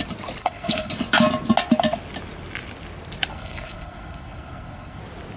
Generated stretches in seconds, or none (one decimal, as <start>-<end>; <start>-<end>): 0.4-0.9; 3.3-5.0